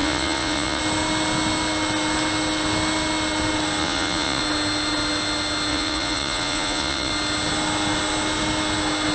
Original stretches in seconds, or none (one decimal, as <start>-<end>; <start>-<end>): 0.8-3.8; 4.4-5.7; 7.1-9.1